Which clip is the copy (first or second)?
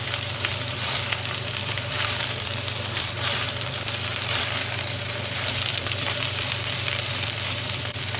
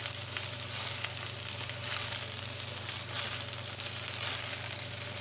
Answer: first